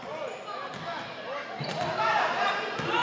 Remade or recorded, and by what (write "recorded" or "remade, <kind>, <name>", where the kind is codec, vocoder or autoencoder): recorded